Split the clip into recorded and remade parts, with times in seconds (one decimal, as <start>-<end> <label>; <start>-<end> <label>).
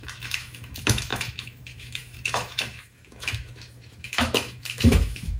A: 0.0-5.4 remade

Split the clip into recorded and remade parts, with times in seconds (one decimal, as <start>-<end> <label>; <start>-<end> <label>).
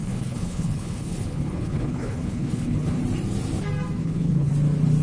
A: 0.0-3.0 remade; 3.0-4.0 recorded; 4.0-4.5 remade; 4.5-5.0 recorded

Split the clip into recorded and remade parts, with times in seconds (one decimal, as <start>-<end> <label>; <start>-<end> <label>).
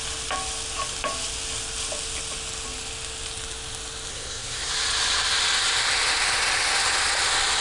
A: 0.0-4.1 recorded; 4.1-4.7 remade; 4.7-7.6 recorded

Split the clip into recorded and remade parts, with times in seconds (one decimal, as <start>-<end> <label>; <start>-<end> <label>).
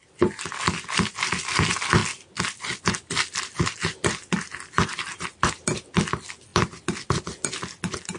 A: 0.0-8.2 recorded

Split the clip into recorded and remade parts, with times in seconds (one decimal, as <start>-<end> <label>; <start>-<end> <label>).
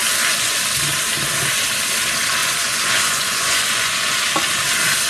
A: 0.0-0.6 remade; 0.6-2.4 recorded; 2.4-4.1 remade; 4.1-5.1 recorded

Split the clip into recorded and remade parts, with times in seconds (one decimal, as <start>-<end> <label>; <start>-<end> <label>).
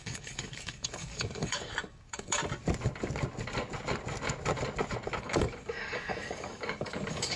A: 0.0-2.4 remade; 2.4-5.2 recorded; 5.2-7.4 remade